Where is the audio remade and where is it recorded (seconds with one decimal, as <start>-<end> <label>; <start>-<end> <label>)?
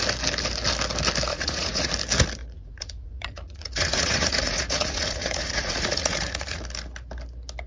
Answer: 0.0-1.3 recorded; 1.3-1.9 remade; 1.9-2.4 recorded; 2.4-6.6 remade; 6.6-7.7 recorded